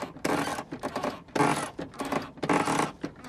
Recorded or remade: recorded